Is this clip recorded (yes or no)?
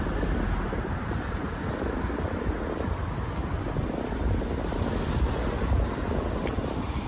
yes